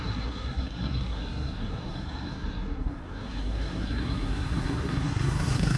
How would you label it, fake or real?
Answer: fake